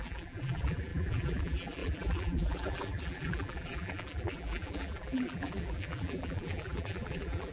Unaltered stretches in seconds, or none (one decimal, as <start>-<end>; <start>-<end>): none